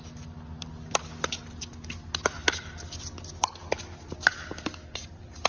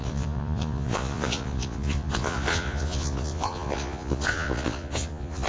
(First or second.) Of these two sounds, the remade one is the second